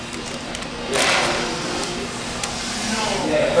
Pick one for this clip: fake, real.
real